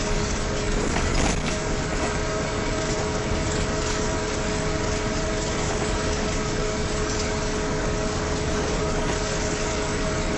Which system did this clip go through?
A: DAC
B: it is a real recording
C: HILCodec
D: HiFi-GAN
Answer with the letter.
A